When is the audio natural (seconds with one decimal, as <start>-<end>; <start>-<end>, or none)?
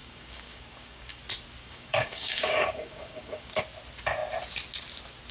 1.2-1.6; 3.6-5.3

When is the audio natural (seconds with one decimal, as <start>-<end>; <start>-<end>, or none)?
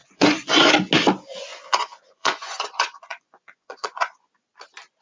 0.7-1.5; 4.3-5.0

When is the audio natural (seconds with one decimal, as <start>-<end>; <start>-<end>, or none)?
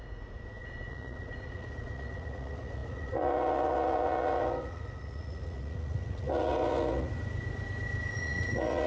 7.1-8.1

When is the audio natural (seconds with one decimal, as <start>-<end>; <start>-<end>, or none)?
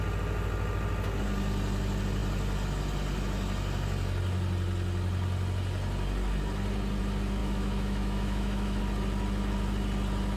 0.0-7.4; 8.8-10.4